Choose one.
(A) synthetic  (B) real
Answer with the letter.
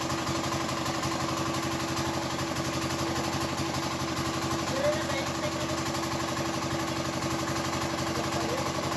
B